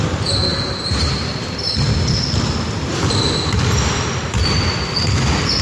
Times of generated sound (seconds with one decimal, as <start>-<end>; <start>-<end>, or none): 0.5-1.7